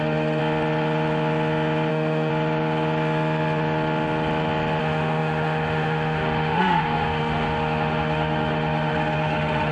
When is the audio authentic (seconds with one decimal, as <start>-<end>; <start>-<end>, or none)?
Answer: 0.4-1.9; 2.3-4.8